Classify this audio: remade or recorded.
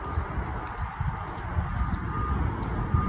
recorded